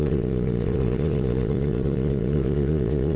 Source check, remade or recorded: remade